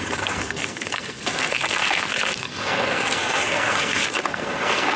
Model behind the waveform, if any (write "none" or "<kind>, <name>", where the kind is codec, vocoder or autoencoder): codec, SNAC